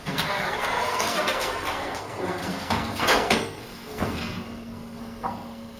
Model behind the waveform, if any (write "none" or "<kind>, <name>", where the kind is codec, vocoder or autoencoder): codec, SNAC